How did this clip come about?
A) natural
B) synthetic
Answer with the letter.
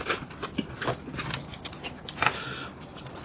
A